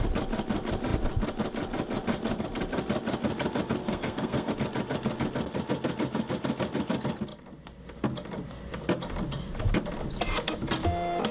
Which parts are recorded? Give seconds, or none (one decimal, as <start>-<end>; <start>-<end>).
0.0-3.8; 4.5-11.3

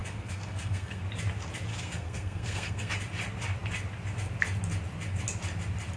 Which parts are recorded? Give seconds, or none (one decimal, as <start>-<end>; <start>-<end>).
1.0-1.7; 2.9-6.0

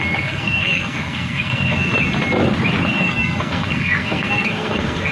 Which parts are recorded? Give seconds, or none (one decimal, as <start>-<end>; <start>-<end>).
1.9-3.0

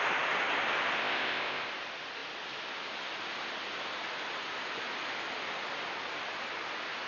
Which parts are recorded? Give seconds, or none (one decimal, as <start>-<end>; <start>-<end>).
0.0-1.0; 1.7-7.1

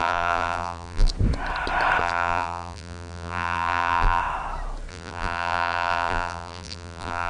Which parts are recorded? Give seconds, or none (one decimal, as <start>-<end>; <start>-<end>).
1.1-2.0; 4.2-4.9

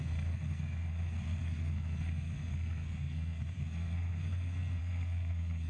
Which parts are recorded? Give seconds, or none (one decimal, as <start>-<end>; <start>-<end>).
none

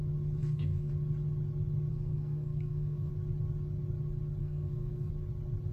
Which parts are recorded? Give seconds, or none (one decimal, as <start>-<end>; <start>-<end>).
0.0-0.4; 0.9-1.9; 3.1-4.4; 5.1-5.7

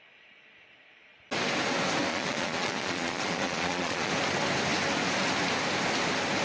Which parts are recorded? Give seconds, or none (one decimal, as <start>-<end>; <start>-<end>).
0.0-2.1; 4.1-6.4